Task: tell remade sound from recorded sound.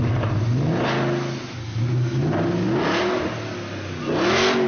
recorded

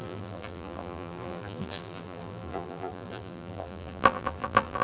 remade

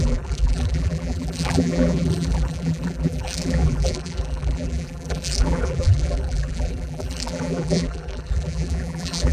remade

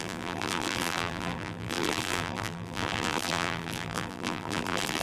remade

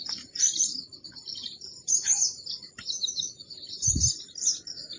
remade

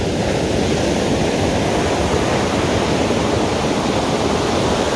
remade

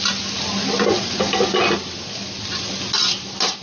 recorded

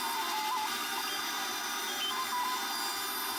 recorded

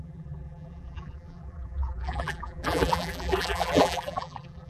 remade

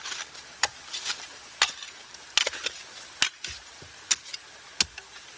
recorded